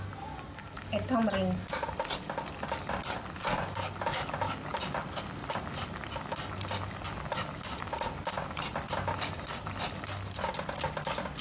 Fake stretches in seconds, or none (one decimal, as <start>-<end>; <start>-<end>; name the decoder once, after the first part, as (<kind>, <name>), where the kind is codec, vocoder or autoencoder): none